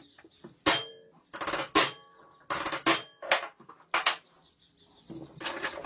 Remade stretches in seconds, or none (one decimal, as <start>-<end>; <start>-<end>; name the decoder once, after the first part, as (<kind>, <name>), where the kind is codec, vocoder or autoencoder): none